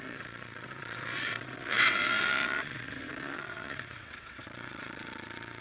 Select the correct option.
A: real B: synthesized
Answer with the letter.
B